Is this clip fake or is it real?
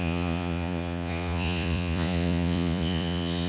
fake